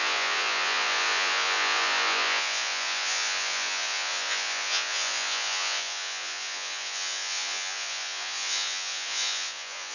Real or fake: fake